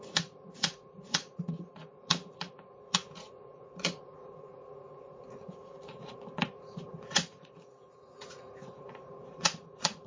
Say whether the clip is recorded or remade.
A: remade